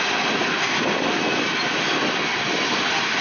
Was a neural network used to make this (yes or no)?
no